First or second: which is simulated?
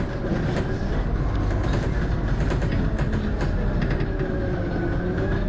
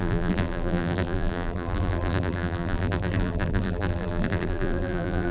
second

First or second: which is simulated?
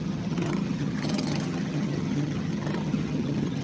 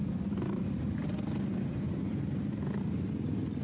first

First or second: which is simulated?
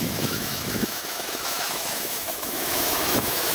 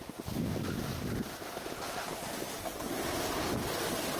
first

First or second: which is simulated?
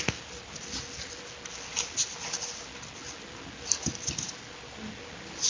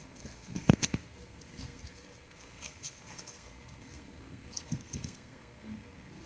second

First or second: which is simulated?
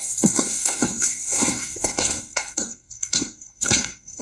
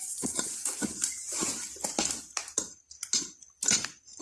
first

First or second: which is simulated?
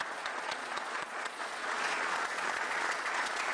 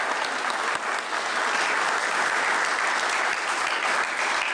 first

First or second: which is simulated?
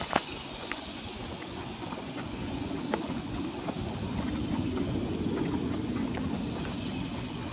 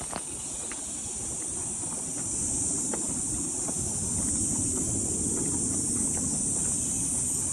first